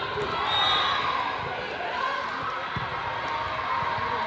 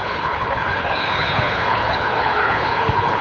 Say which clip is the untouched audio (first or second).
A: first